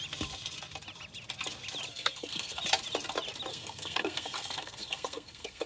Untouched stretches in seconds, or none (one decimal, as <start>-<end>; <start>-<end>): 0.0-1.9; 2.6-3.5